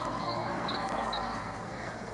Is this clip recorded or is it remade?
remade